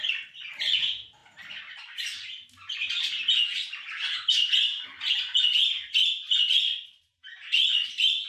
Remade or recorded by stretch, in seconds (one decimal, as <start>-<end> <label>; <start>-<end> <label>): 0.0-8.3 recorded